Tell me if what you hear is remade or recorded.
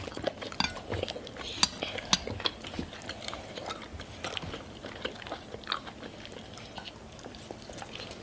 recorded